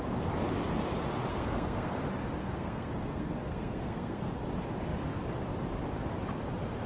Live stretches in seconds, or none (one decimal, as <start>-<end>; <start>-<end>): 0.0-1.3; 2.0-2.4; 4.3-6.9